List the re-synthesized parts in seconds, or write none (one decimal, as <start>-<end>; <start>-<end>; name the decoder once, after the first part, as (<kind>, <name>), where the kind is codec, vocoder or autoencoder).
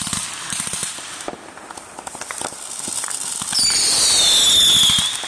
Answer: 0.8-4.0 (vocoder, BigVGAN v2)